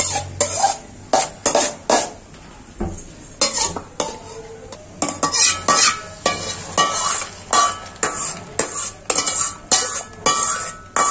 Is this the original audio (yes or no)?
yes